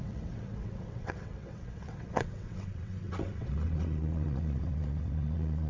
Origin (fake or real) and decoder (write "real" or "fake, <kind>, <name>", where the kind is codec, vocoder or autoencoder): fake, vocoder, WaveNeXt